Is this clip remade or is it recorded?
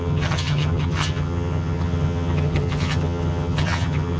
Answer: remade